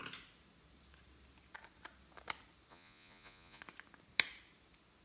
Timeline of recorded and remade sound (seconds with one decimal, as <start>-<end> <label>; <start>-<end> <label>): 0.0-2.7 recorded; 2.7-3.6 remade; 3.6-5.0 recorded

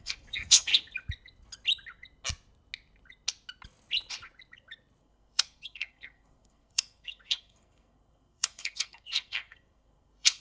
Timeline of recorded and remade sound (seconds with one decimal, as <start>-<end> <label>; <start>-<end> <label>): 0.0-0.7 remade; 0.7-5.0 recorded; 5.0-10.4 remade

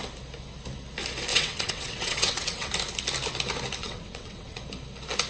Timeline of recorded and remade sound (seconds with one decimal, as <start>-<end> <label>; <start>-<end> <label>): 0.0-1.3 recorded; 1.3-2.7 remade; 2.7-3.8 recorded; 3.8-4.6 remade; 4.6-5.3 recorded

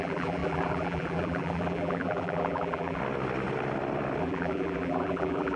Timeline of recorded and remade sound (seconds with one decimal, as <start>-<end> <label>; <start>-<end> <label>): 0.0-3.0 remade; 3.0-4.2 recorded; 4.2-5.6 remade

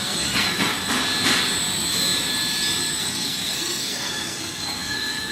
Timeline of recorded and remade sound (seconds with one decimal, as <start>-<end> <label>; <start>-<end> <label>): 0.0-0.7 remade; 0.7-2.9 recorded; 2.9-5.3 remade

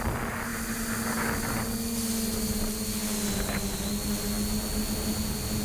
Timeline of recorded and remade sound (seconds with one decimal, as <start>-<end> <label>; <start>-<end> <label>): 0.0-5.6 recorded

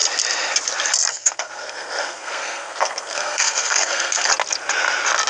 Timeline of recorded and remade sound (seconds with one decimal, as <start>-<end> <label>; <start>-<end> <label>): 0.0-1.1 recorded; 1.1-4.3 remade; 4.3-5.3 recorded

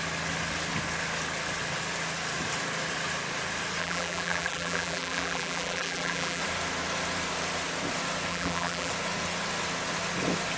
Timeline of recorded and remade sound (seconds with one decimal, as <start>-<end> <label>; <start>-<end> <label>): 0.0-3.8 recorded; 3.8-6.4 remade; 6.4-8.3 recorded; 8.3-8.9 remade; 8.9-10.6 recorded